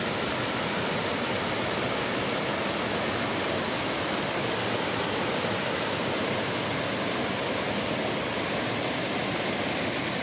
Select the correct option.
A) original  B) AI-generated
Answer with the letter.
A